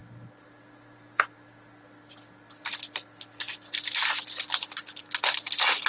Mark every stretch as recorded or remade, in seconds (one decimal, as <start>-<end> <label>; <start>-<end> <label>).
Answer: 0.0-5.9 recorded